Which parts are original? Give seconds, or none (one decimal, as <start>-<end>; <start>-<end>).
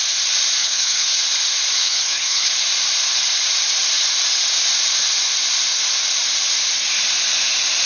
0.0-0.6; 1.2-1.8; 2.5-7.9